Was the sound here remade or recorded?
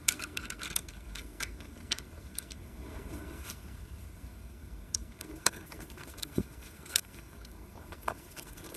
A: remade